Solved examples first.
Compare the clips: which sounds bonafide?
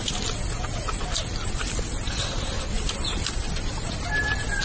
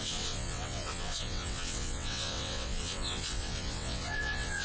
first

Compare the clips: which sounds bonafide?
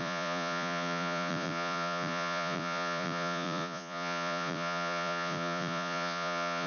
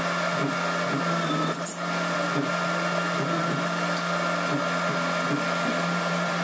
second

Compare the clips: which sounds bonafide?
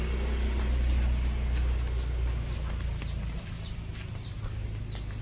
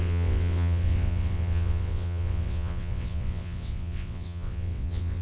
first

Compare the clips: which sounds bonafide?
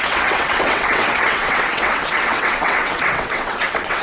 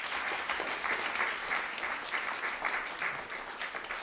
second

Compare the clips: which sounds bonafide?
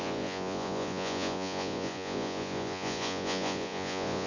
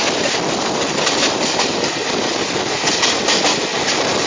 second